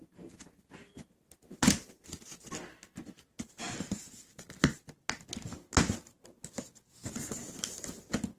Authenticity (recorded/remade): recorded